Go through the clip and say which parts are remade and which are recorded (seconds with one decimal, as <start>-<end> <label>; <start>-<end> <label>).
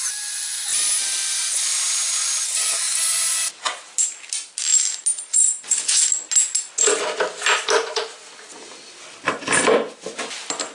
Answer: 0.0-5.3 recorded; 5.3-6.0 remade; 6.0-10.7 recorded